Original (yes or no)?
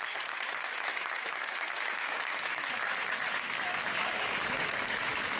no